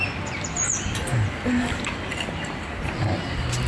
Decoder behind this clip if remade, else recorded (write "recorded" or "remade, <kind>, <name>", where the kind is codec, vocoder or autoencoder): recorded